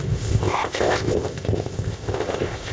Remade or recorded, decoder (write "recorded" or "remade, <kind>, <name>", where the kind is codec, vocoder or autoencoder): remade, codec, ZipCodec